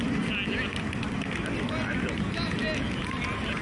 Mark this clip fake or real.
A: real